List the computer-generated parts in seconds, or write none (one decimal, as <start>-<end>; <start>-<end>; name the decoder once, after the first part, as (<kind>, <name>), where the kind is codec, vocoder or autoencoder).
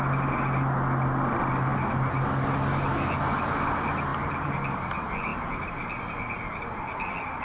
none